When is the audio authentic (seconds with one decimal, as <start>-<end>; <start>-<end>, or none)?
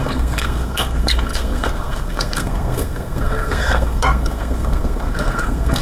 none